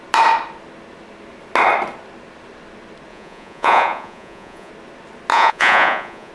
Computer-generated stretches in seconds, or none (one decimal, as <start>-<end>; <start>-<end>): 3.1-4.7; 5.3-6.3